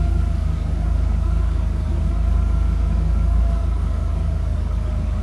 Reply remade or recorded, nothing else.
remade